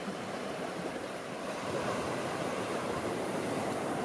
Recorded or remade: remade